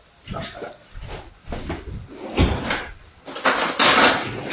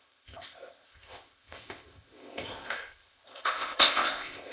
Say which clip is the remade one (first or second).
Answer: second